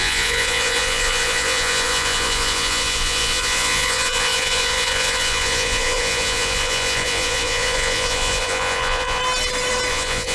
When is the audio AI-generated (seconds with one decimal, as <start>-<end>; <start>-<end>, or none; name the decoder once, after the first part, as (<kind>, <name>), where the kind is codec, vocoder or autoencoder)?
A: 0.0-9.2 (vocoder, Vocos); 9.9-10.3